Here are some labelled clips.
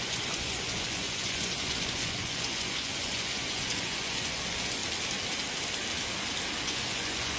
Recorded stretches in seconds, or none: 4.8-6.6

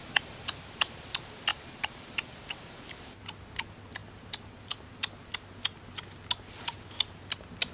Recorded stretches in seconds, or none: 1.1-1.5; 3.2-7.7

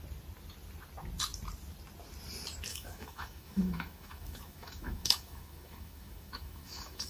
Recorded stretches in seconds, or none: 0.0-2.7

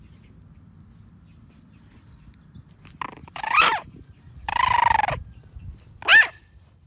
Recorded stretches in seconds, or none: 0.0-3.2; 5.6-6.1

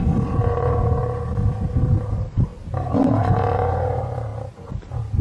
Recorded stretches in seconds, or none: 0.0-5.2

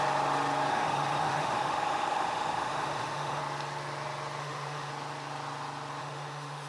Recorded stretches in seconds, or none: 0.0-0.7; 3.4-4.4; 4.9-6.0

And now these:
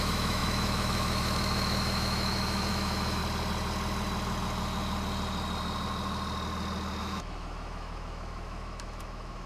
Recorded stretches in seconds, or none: 3.2-7.0